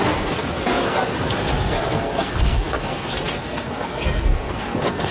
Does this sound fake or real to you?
fake